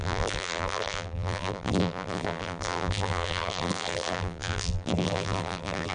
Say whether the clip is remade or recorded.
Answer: remade